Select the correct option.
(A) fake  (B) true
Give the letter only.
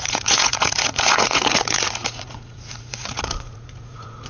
A